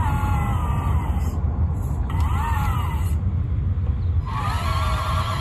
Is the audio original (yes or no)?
yes